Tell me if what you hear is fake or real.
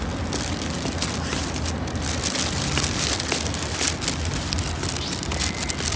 real